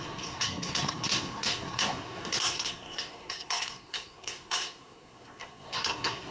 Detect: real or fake fake